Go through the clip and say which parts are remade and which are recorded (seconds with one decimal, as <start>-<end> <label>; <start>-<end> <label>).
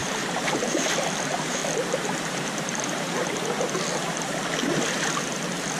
0.0-1.6 remade; 1.6-2.2 recorded; 2.2-3.2 remade; 3.2-5.8 recorded